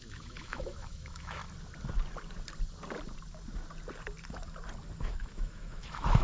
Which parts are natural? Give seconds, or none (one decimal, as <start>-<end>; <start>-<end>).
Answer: 1.4-5.0